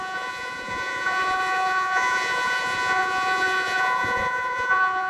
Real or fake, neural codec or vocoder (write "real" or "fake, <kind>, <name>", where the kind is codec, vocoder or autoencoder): fake, vocoder, Vocos